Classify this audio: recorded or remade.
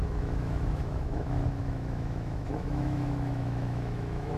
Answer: remade